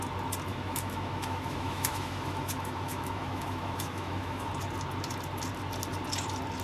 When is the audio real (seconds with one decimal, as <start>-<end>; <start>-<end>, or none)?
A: 0.0-0.5; 4.5-6.6